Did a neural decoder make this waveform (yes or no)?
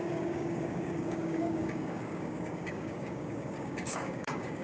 yes